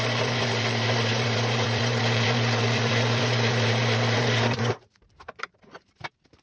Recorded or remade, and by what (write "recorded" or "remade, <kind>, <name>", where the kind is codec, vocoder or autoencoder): remade, vocoder, BigVGAN v2